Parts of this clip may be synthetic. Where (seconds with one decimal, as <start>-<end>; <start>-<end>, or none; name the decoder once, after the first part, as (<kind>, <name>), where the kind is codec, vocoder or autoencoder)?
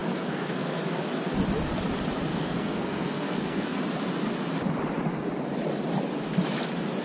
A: 0.0-0.8 (codec, SNAC); 2.3-3.8